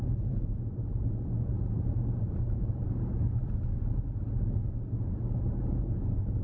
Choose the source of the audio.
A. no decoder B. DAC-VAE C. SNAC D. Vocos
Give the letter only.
D